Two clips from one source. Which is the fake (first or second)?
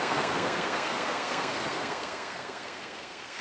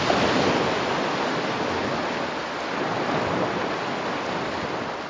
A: first